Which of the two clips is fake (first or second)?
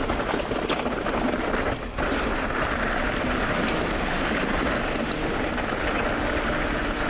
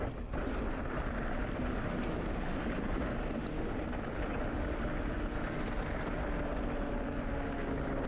first